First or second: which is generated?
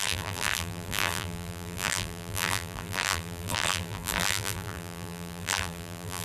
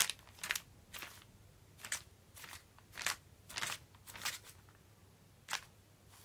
first